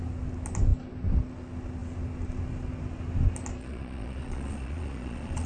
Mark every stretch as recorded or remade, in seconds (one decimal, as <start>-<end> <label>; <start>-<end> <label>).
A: 0.0-3.6 recorded; 3.6-5.5 remade